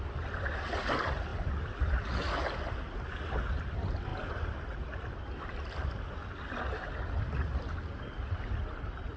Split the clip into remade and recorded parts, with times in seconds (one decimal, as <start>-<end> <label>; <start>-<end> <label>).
0.0-9.2 recorded